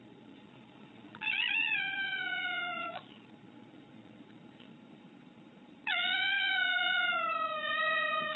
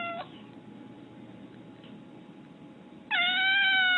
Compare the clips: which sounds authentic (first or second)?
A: second